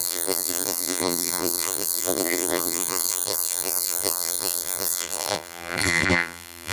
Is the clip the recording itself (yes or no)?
no